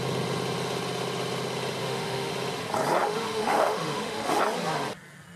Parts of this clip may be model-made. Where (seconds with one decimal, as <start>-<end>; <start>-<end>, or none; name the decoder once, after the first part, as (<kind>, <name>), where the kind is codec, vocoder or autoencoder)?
1.8-2.3 (autoencoder, DAC-VAE); 3.0-4.4